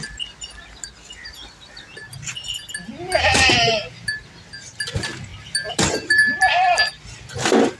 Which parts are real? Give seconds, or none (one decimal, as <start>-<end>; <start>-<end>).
0.0-7.8